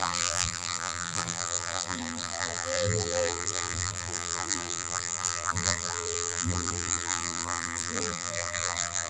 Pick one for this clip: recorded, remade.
remade